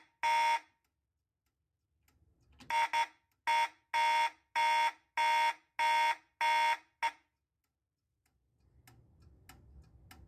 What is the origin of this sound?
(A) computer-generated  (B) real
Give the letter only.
B